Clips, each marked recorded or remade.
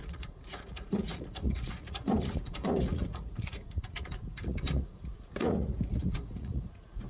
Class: remade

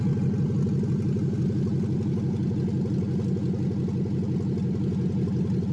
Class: recorded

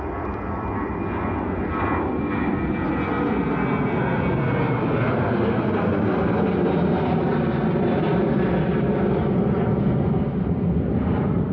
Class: recorded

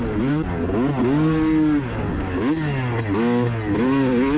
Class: recorded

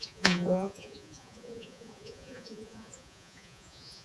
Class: remade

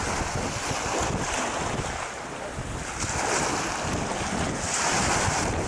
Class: recorded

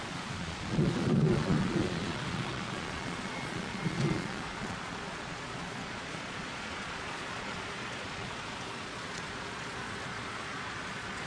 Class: remade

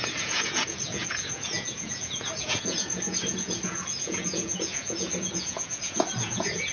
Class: remade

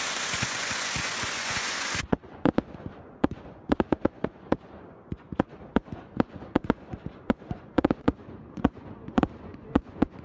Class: remade